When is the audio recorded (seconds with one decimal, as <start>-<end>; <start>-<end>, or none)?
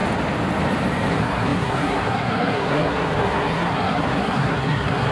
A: 0.0-1.1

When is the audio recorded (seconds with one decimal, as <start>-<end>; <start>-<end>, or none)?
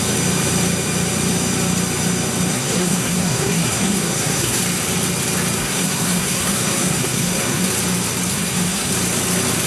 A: 0.0-2.5; 4.6-5.6; 7.7-8.3; 8.9-9.7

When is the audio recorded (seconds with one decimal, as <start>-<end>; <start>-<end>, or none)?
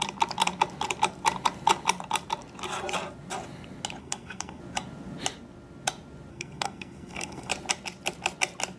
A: 0.0-4.0; 4.6-6.3; 7.5-8.8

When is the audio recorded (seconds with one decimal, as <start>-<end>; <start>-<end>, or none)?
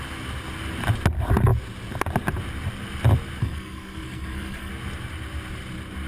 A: 0.0-3.4; 4.7-6.1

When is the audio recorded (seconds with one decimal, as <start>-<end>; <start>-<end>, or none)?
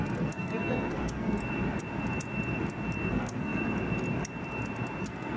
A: 1.4-3.1; 3.6-5.0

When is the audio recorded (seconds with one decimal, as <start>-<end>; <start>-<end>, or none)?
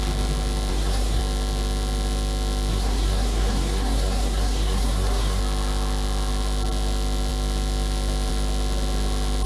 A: 0.0-0.7; 1.2-2.7; 5.4-9.5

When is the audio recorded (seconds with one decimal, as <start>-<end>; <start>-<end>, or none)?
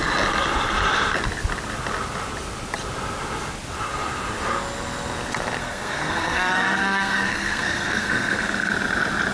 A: 0.0-5.6; 8.7-9.3